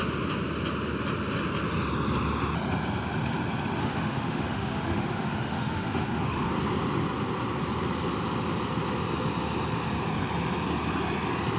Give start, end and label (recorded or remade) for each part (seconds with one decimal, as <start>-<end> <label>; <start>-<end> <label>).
0.0-3.8 recorded; 3.8-6.5 remade; 6.5-11.6 recorded